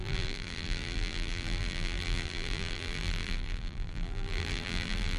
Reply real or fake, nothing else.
fake